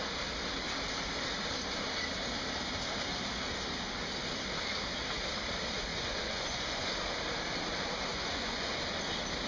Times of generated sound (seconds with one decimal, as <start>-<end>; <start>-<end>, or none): 5.9-6.9; 8.1-8.7